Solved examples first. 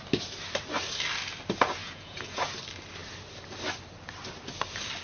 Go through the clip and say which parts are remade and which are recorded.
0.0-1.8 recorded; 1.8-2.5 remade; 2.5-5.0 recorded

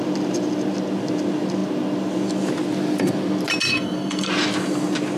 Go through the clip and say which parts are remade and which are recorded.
0.0-3.7 recorded; 3.7-4.3 remade; 4.3-5.2 recorded

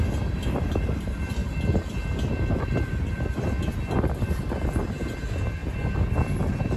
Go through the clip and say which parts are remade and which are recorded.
0.0-6.8 recorded